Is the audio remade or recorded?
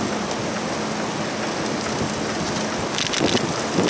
recorded